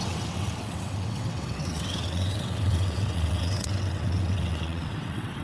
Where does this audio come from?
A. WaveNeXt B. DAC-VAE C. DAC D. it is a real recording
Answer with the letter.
A